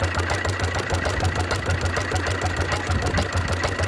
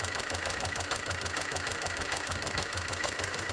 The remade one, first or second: second